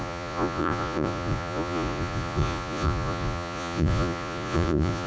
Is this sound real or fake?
fake